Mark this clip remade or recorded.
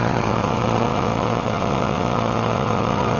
remade